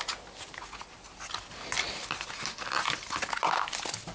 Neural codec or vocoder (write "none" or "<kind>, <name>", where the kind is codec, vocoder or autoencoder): none